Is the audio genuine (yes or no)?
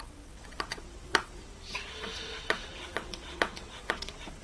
no